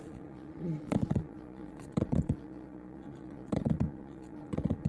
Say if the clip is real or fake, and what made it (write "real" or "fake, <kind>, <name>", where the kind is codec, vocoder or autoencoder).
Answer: fake, vocoder, Vocos